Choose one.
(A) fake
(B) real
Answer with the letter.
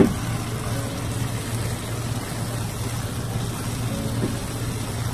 B